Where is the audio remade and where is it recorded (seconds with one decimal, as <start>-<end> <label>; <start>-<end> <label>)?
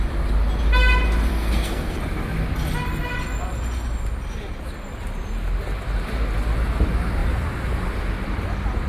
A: 0.0-1.3 recorded; 1.3-2.0 remade; 2.0-8.9 recorded